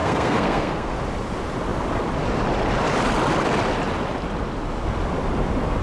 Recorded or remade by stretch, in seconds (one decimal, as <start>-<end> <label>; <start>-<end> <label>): 0.0-1.0 remade; 1.0-5.8 recorded